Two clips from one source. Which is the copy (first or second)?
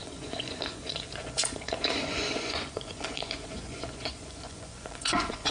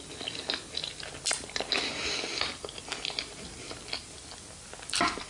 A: first